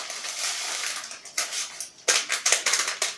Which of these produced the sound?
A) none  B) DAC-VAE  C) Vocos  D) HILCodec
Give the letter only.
A